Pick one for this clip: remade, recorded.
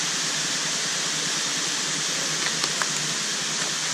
recorded